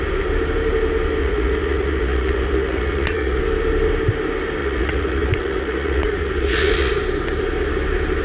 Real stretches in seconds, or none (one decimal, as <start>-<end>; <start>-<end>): 0.0-1.2; 3.4-4.6; 6.9-8.2